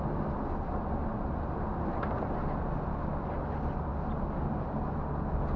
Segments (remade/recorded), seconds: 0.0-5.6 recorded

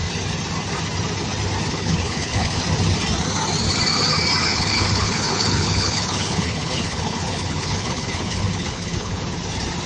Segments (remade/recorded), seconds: 0.0-1.7 recorded; 1.7-2.6 remade; 2.6-4.4 recorded; 4.4-9.2 remade; 9.2-9.9 recorded

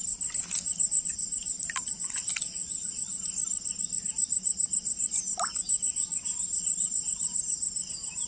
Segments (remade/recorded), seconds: 0.0-8.3 recorded

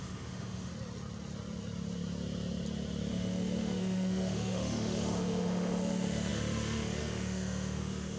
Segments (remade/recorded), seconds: 0.0-0.7 remade; 0.7-3.1 recorded; 3.1-8.2 remade